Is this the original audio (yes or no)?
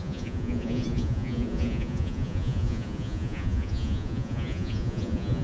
no